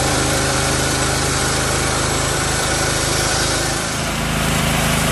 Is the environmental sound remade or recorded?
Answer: remade